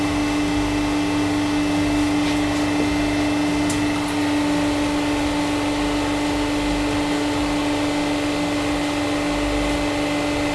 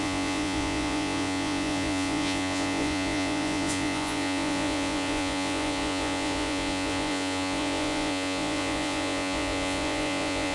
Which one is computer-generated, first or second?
second